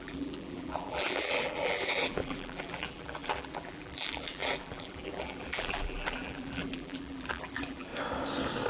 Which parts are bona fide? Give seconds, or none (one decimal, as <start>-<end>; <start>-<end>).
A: 7.9-8.7